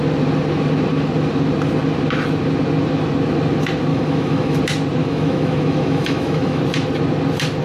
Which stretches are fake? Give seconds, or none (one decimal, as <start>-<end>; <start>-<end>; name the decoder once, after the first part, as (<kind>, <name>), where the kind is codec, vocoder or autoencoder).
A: 3.9-4.6 (autoencoder, DAC-VAE); 5.0-6.6